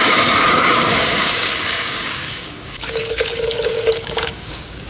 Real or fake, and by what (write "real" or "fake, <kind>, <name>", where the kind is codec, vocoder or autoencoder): fake, codec, DAC